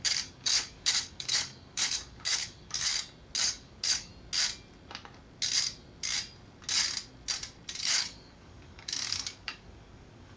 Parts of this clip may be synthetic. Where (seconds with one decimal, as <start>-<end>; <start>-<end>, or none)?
0.0-2.9; 3.4-4.1; 7.8-10.4